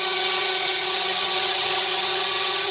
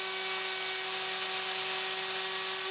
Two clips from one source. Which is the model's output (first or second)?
first